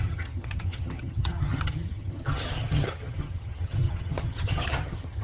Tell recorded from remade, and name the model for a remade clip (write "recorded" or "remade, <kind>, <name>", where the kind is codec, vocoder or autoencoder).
remade, vocoder, HiFi-GAN